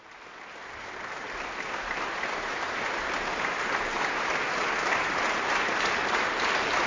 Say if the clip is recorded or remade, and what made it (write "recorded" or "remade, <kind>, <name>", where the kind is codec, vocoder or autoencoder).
recorded